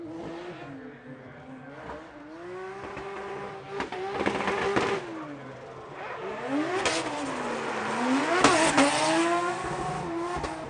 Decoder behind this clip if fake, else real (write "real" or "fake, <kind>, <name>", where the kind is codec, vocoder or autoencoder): real